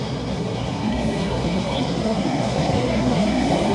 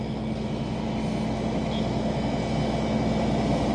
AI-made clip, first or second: first